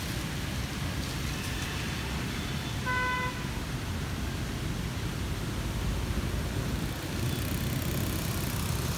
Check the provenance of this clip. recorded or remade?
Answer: recorded